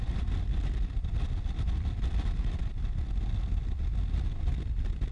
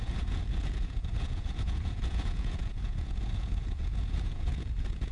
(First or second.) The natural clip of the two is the first